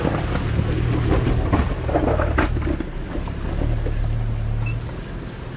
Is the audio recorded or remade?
recorded